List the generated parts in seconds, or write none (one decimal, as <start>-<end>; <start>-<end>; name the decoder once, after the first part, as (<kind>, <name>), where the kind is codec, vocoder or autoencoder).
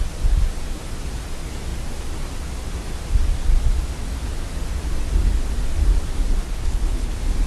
6.4-7.1 (codec, HILCodec)